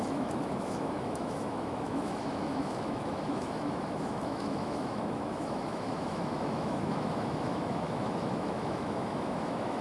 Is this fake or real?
fake